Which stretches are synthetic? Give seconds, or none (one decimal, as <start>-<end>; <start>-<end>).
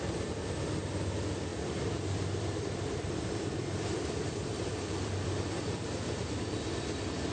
1.5-5.9